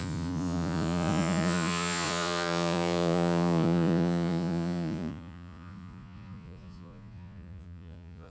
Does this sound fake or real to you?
fake